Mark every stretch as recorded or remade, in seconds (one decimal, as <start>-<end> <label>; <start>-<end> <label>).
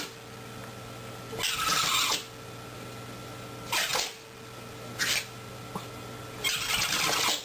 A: 0.0-7.4 recorded